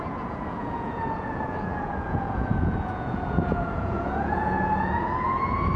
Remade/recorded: remade